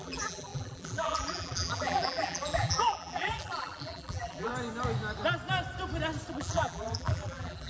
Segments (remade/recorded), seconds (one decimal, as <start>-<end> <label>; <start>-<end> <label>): 0.0-4.5 remade; 4.5-6.3 recorded; 6.3-7.7 remade